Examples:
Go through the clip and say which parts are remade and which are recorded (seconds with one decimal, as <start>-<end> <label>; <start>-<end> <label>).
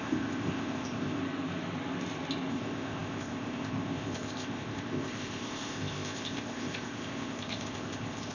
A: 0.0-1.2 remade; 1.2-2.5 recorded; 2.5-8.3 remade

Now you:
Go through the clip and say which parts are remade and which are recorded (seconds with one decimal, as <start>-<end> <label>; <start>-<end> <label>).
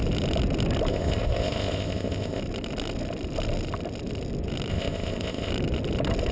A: 0.0-0.9 recorded; 0.9-2.4 remade; 2.4-4.7 recorded; 4.7-5.5 remade; 5.5-6.3 recorded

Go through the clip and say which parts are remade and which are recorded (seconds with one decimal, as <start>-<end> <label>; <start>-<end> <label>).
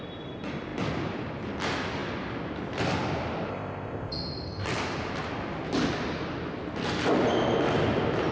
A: 0.0-3.5 recorded; 3.5-4.1 remade; 4.1-8.3 recorded